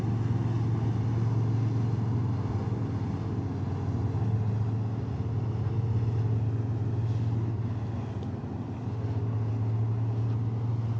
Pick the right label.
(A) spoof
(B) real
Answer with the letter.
B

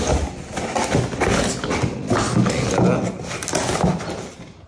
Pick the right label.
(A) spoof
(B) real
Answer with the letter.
B